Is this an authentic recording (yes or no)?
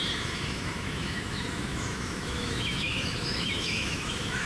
no